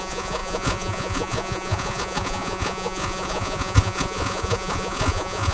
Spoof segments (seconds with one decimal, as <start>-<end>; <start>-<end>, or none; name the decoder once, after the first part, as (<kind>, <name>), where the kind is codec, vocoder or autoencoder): 0.0-5.5 (vocoder, Vocos)